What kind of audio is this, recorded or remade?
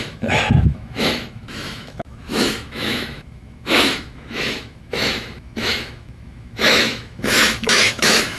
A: remade